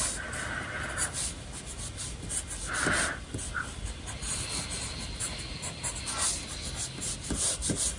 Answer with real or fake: real